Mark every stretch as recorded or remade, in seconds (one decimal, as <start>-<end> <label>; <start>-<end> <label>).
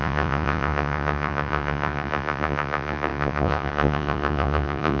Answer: 0.0-5.0 remade